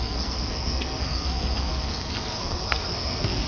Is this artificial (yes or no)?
yes